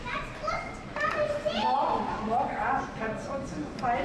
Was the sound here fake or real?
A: real